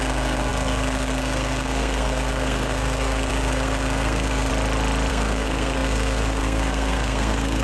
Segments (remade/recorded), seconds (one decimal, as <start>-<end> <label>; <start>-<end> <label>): 0.0-4.5 remade; 4.5-5.1 recorded; 5.1-7.6 remade